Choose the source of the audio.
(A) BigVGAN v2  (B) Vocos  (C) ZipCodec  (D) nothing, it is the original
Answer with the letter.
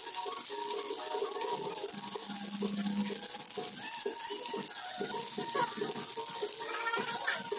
D